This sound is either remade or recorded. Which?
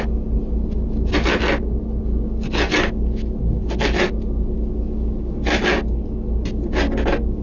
recorded